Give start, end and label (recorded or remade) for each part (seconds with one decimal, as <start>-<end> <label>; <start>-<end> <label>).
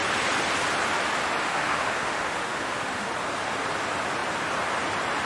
0.0-1.4 recorded; 1.4-3.1 remade; 3.1-5.3 recorded